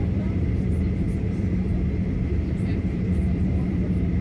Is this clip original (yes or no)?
no